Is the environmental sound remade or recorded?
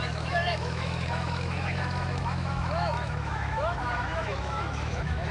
remade